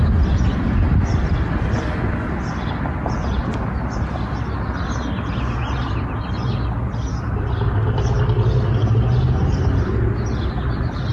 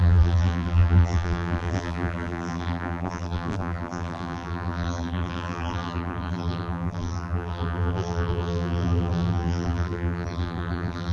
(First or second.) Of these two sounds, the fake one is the second